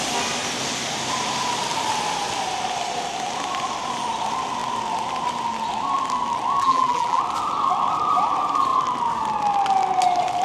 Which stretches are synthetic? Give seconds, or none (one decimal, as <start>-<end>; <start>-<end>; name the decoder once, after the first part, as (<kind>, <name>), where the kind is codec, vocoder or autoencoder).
6.6-7.2 (vocoder, BigVGAN v2)